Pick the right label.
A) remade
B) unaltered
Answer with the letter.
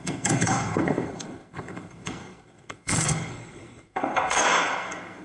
A